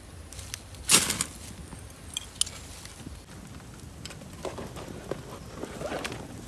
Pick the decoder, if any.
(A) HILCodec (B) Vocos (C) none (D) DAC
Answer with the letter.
C